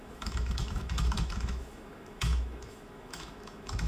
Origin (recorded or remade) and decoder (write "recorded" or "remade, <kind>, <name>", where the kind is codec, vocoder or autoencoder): remade, autoencoder, DAC-VAE